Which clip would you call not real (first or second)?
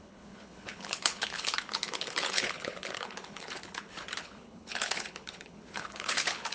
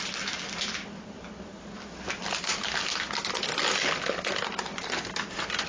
first